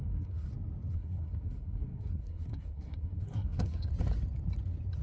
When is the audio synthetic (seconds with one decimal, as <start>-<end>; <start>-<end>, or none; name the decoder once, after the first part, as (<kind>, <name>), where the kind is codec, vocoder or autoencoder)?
0.0-0.5 (codec, SNAC); 0.9-3.9